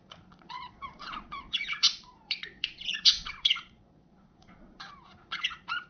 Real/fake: fake